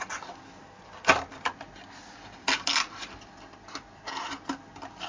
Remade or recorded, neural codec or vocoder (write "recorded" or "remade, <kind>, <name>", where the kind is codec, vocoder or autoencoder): recorded